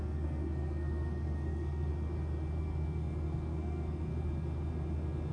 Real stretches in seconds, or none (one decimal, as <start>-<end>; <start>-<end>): 1.9-2.6; 4.1-5.3